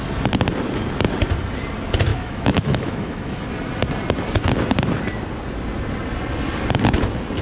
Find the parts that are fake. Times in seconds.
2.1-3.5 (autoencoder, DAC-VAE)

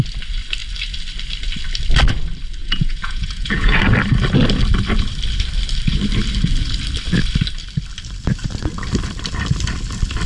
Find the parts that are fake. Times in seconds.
2.6-3.8 (vocoder, Vocos)

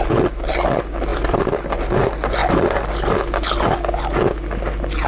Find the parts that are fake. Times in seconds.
none